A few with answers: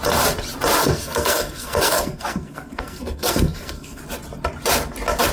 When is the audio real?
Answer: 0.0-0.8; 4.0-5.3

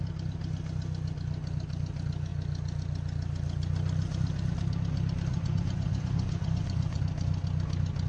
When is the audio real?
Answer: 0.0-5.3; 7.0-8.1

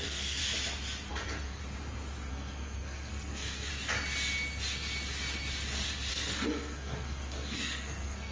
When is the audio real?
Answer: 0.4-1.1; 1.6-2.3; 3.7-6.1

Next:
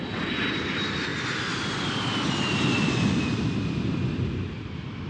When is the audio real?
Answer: 0.0-5.1

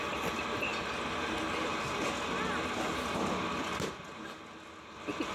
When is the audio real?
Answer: 0.0-5.3

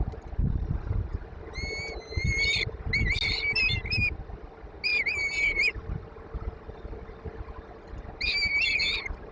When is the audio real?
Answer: 0.0-4.9; 5.6-9.3

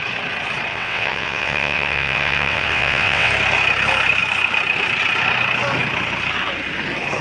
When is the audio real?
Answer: 0.0-0.7; 3.3-7.2

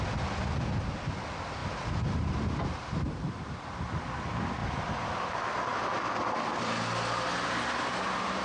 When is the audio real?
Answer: 0.0-4.6; 5.1-8.4